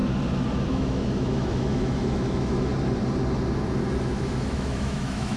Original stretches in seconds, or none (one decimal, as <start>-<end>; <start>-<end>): 0.0-0.7; 2.7-4.0